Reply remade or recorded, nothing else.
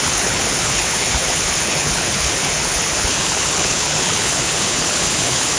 remade